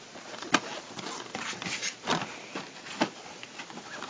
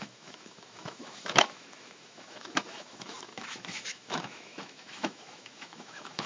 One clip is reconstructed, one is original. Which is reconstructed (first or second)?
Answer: second